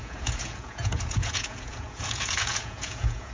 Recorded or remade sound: remade